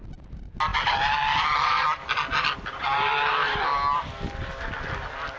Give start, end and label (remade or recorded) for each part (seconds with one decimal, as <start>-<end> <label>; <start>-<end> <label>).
0.0-5.4 recorded